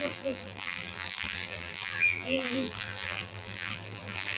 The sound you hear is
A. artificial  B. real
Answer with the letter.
A